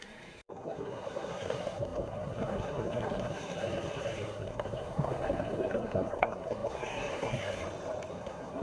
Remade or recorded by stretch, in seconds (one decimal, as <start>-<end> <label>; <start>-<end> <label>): 0.0-7.6 remade; 7.6-8.1 recorded; 8.1-8.6 remade